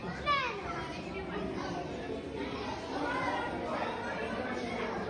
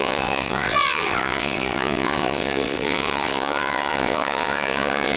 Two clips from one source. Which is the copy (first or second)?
second